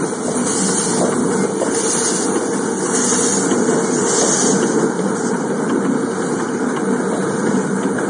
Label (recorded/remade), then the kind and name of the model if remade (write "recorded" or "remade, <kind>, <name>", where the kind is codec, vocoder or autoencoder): recorded